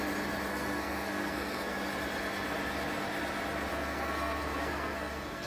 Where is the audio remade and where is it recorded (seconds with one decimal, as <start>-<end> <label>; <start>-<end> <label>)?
0.0-0.5 recorded; 0.5-1.8 remade; 1.8-3.7 recorded; 3.7-5.5 remade